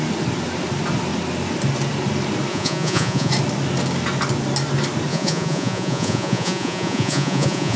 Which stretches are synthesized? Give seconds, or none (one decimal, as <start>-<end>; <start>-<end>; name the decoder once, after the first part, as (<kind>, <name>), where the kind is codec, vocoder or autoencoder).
2.5-3.3 (vocoder, Vocos); 5.1-7.8